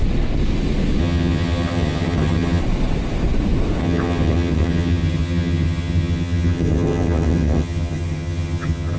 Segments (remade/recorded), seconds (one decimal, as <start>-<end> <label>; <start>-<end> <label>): 0.0-1.0 recorded; 1.0-2.6 remade; 2.6-3.8 recorded; 3.8-9.0 remade